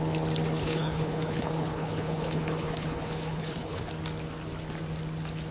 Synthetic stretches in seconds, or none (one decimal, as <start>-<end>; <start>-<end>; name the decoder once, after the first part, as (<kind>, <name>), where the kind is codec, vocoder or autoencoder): 0.6-3.9 (codec, HILCodec)